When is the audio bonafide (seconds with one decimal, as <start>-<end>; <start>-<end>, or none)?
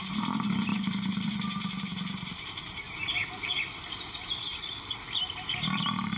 3.2-5.5